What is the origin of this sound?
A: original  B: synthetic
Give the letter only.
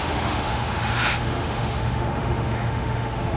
B